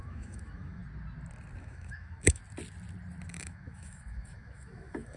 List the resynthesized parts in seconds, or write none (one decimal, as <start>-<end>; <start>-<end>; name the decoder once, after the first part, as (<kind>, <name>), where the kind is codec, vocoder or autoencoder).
0.0-0.8 (autoencoder, DAC-VAE); 1.6-2.4; 3.3-5.2